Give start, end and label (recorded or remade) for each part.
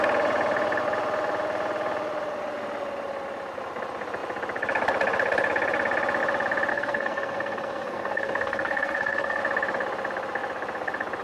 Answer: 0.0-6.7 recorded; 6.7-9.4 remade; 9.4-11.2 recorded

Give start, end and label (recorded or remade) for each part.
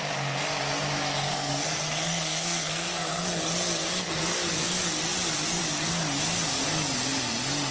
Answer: 0.0-1.3 recorded; 1.3-3.4 remade; 3.4-7.7 recorded